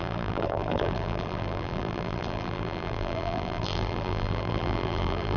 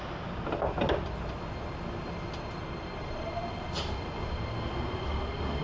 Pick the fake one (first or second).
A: first